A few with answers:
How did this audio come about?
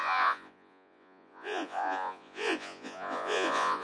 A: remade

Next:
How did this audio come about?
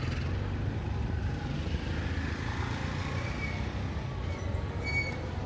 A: recorded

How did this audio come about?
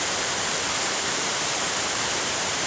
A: remade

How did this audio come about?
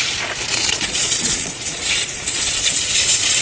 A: remade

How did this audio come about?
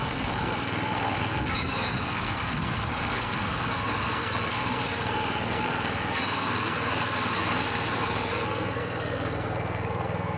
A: remade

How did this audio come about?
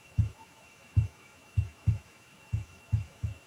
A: remade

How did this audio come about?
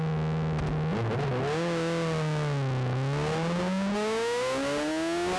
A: recorded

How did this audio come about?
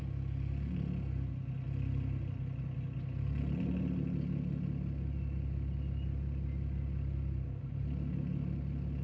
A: recorded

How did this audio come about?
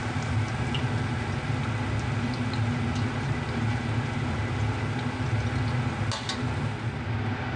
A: recorded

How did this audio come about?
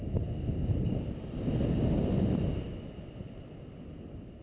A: recorded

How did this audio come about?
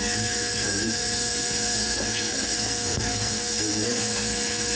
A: remade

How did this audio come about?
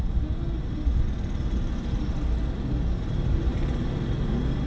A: recorded